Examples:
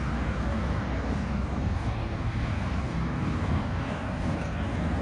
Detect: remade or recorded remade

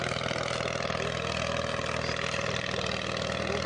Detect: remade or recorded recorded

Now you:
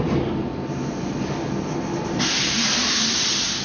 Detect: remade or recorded recorded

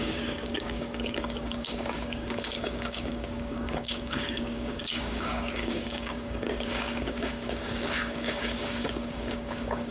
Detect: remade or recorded remade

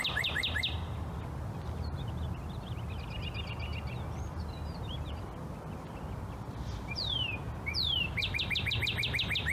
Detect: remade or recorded recorded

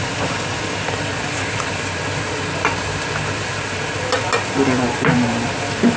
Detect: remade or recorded recorded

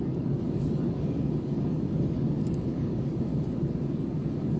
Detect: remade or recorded remade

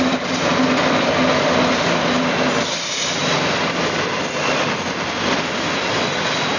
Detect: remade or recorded recorded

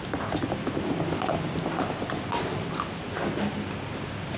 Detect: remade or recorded recorded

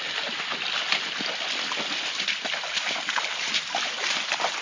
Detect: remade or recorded recorded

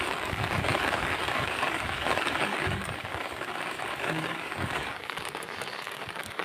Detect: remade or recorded remade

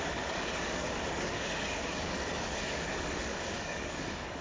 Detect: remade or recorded remade